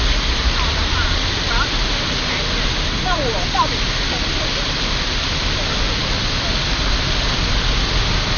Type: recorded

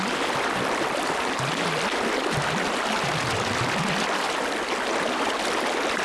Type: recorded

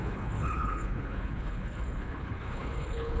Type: remade